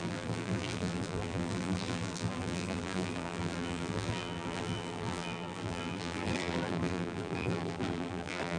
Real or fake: fake